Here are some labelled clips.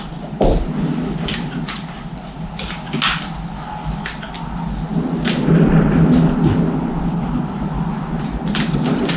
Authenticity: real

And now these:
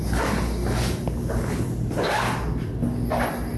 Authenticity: real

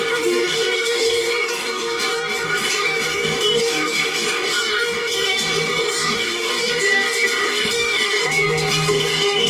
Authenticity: fake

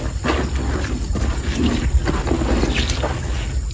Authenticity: real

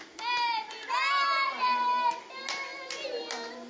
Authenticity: real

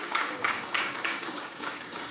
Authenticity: fake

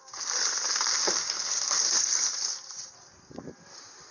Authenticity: real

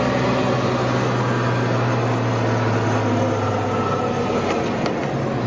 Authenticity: real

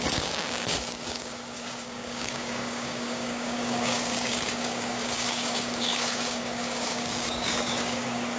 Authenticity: fake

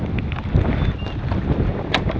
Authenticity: real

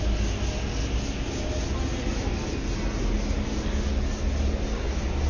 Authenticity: real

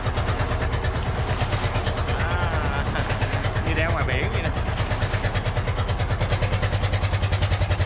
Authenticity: real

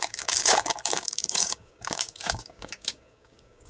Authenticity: fake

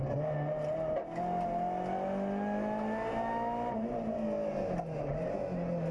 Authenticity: real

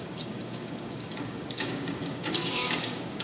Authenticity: fake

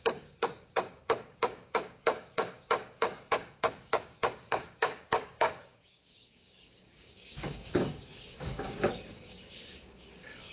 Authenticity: fake